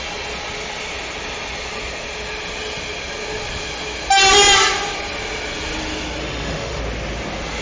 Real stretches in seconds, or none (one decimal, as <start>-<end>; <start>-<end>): 0.0-6.2; 6.8-7.6